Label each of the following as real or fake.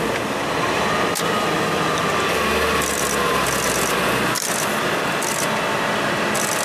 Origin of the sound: real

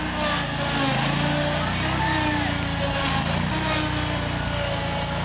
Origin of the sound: real